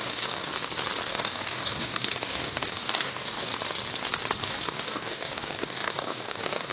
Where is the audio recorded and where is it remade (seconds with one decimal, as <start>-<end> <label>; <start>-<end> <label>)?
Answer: 0.0-0.5 remade; 0.5-1.1 recorded; 1.1-3.5 remade; 3.5-4.4 recorded; 4.4-6.7 remade